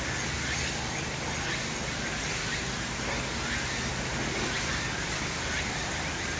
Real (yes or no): yes